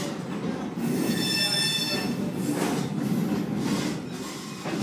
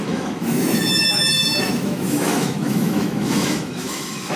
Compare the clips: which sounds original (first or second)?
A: first